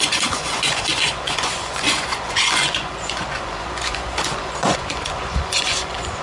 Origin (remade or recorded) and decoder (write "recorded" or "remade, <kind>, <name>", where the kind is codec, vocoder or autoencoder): remade, vocoder, Vocos